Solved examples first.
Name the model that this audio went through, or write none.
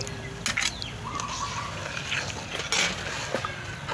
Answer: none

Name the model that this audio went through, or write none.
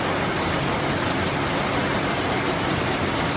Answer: none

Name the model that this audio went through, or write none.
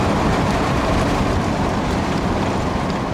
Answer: vocoder, BigVGAN v2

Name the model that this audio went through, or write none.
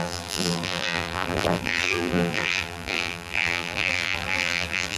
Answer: vocoder, BigVGAN v2